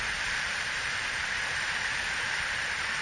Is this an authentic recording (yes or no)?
no